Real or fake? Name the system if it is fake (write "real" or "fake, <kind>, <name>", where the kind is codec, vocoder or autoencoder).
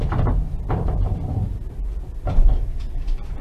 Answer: fake, vocoder, BigVGAN v2